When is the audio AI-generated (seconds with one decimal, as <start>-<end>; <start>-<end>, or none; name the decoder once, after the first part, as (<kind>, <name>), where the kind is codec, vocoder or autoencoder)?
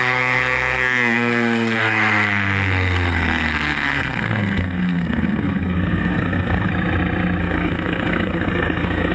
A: 0.0-6.7 (codec, SNAC); 7.4-9.1